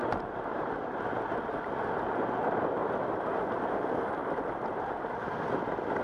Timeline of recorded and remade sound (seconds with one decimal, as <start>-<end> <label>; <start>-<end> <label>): 0.0-0.7 remade; 0.7-6.0 recorded